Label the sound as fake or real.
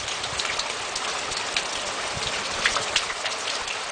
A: fake